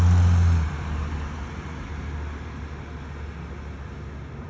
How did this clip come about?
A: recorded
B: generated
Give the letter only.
A